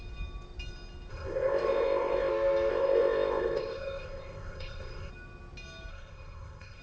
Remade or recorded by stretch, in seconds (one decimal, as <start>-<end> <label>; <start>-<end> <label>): 0.0-1.1 recorded; 1.1-2.3 remade; 2.3-2.7 recorded; 2.7-5.1 remade; 5.1-5.9 recorded; 5.9-6.8 remade